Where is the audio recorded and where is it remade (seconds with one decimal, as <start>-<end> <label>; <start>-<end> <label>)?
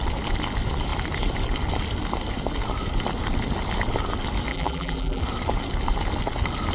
0.0-4.5 recorded; 4.5-5.2 remade; 5.2-6.7 recorded